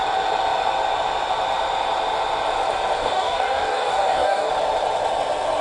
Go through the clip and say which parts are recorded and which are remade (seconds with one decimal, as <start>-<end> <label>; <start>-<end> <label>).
0.0-3.0 recorded; 3.0-4.5 remade; 4.5-5.6 recorded